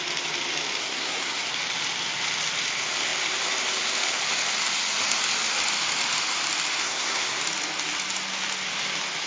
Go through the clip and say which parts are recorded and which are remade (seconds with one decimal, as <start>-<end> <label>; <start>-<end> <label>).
0.0-0.8 recorded; 0.8-1.5 remade; 1.5-6.8 recorded; 6.8-7.4 remade; 7.4-9.3 recorded